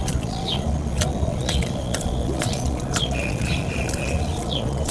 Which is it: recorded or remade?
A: remade